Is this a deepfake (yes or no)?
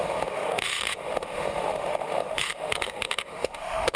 yes